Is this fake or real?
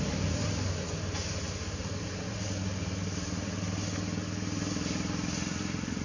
real